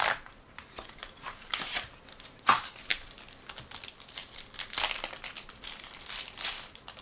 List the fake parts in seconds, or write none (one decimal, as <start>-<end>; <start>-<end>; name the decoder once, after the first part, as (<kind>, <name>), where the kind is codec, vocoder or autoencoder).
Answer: 0.0-2.9 (vocoder, BigVGAN v2); 5.5-7.0